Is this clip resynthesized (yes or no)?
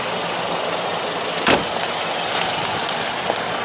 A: no